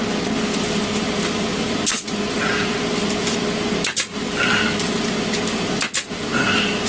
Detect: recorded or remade recorded